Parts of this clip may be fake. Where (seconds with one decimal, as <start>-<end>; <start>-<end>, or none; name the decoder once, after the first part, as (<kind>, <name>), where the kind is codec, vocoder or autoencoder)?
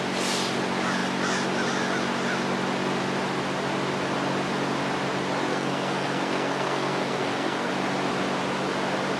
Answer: 5.5-7.7 (codec, SNAC)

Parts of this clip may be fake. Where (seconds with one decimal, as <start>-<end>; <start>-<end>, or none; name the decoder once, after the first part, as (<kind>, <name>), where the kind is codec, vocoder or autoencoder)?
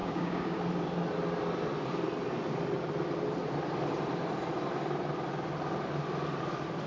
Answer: 0.0-0.6 (codec, DAC)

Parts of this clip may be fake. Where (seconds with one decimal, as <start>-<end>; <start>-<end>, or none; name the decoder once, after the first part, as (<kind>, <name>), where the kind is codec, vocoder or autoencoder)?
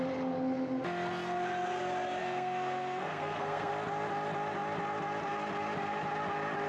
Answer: 2.2-3.7 (codec, SNAC)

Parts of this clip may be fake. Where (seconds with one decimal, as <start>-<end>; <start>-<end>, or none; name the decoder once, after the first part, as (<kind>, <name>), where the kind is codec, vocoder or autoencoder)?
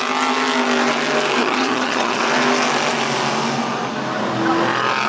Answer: 1.4-2.2 (vocoder, HiFi-GAN)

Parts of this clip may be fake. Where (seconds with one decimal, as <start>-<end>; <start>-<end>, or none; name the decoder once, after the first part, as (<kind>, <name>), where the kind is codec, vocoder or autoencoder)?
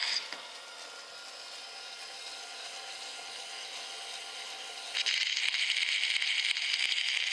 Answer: none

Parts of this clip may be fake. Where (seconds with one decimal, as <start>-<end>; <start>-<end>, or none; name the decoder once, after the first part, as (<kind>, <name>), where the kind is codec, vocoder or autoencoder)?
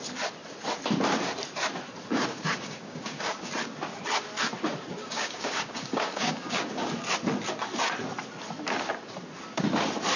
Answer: 2.1-3.5 (codec, DAC); 5.0-6.9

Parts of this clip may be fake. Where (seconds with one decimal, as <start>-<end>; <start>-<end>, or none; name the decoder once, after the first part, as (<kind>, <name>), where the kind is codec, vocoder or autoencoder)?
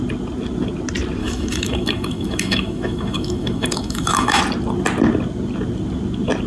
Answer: 1.2-4.4 (autoencoder, DAC-VAE)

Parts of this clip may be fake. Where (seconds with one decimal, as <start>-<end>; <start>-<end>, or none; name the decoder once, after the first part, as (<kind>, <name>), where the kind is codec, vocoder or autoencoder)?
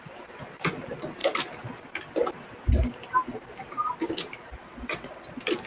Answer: 4.6-5.3 (vocoder, WaveNeXt)